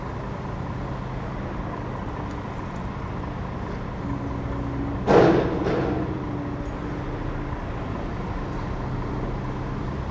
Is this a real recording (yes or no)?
yes